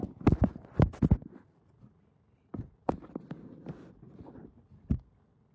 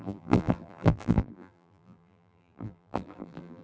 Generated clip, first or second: second